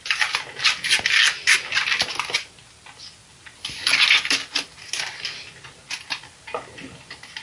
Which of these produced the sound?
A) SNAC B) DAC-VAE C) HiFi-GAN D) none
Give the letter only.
D